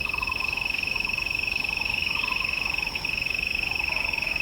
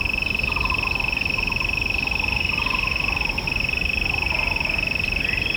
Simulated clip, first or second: first